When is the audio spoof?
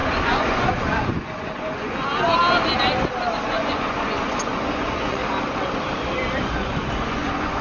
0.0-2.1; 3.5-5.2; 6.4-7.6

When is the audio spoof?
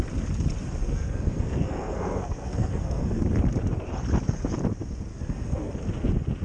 0.8-3.2; 5.1-5.7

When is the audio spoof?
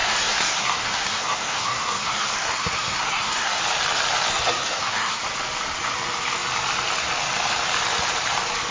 0.0-3.6; 4.3-5.2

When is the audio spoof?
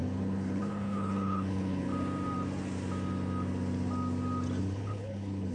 0.0-1.9; 4.6-5.5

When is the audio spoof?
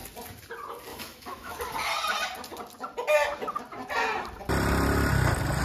0.9-1.5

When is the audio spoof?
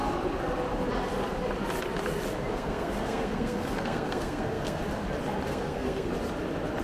2.5-4.8; 5.5-6.1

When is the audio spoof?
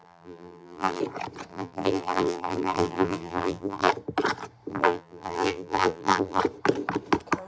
0.0-1.0; 1.5-3.9; 4.7-6.4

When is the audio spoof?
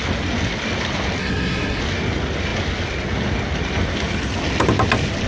1.2-1.8